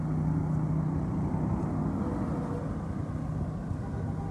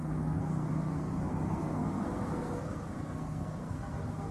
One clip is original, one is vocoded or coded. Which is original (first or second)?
first